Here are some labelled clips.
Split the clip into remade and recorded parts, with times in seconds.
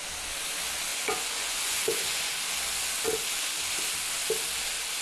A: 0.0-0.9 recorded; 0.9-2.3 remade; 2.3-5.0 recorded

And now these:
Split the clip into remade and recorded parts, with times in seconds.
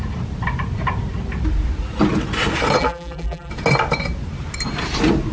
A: 0.0-2.8 recorded; 2.8-3.5 remade; 3.5-5.3 recorded